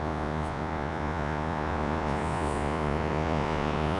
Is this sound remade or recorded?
remade